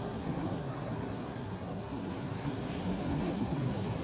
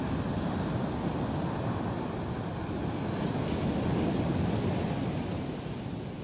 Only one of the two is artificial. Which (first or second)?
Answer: first